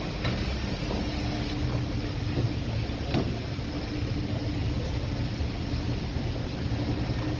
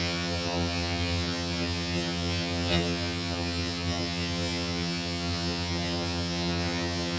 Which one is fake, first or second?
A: second